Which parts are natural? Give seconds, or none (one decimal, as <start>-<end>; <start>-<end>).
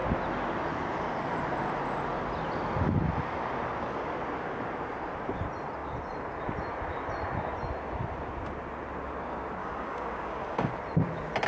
0.0-9.6; 10.7-11.5